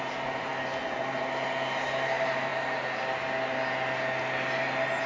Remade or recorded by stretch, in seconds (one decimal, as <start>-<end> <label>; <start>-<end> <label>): 0.0-5.1 recorded